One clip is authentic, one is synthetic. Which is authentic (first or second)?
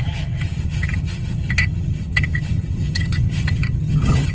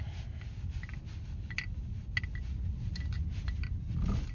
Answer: second